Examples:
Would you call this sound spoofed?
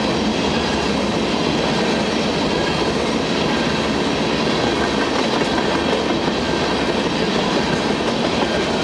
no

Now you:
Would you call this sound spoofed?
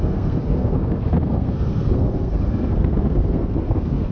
yes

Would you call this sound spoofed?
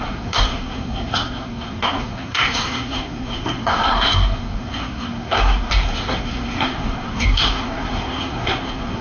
yes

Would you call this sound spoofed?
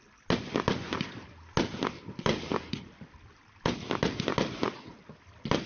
no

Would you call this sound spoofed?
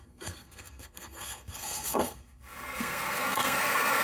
yes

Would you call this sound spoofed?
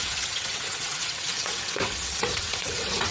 yes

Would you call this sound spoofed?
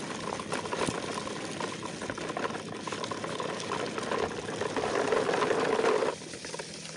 no